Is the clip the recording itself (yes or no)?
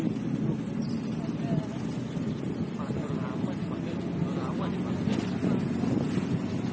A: yes